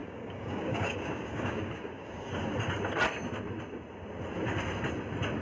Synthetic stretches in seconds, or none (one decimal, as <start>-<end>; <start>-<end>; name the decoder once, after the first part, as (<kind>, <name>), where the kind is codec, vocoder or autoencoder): 0.0-2.3 (codec, DAC)